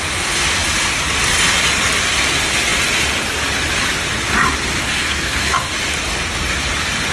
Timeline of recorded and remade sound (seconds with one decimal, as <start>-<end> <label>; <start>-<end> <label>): 0.0-4.8 recorded; 4.8-5.7 remade; 5.7-7.1 recorded